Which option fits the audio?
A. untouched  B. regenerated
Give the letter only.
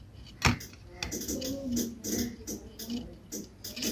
A